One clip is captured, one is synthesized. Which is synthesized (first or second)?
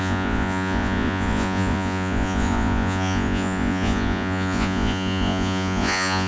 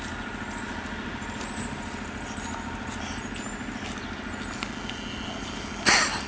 first